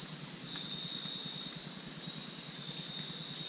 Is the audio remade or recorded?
recorded